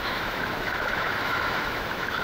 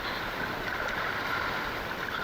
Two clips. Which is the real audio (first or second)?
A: second